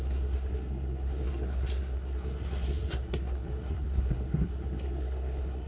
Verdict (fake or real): fake